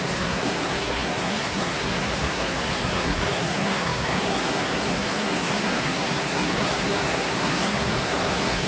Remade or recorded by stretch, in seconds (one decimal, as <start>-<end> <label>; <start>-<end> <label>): 0.0-8.7 remade

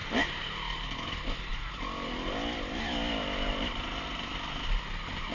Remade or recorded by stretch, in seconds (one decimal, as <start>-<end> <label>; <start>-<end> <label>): 0.0-5.3 recorded

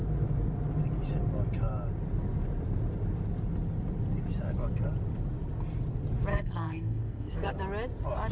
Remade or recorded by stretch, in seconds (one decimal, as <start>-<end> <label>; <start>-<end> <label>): 0.0-6.3 recorded; 6.3-7.5 remade; 7.5-8.3 recorded